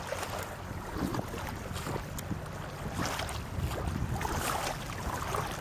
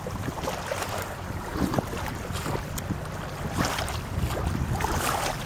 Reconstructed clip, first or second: second